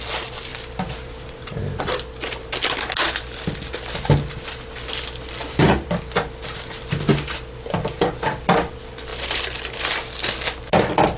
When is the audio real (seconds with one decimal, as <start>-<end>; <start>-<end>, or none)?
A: 0.0-0.5; 1.8-9.1; 9.9-11.2